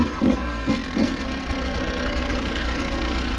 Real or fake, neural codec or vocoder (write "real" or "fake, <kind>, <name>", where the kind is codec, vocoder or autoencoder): fake, codec, SNAC